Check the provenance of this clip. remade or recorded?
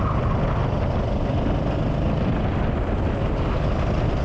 recorded